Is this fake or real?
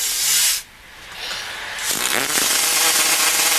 real